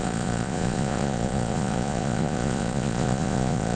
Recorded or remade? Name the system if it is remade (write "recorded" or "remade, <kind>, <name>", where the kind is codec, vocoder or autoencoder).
remade, vocoder, Vocos